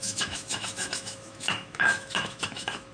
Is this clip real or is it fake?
fake